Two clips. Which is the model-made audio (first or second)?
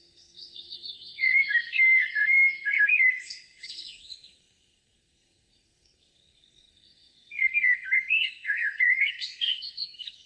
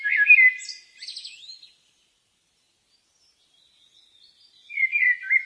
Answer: first